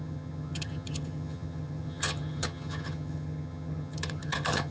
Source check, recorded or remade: remade